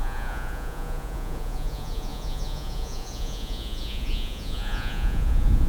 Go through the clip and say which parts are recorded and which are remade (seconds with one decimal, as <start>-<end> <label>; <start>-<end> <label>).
0.0-5.7 remade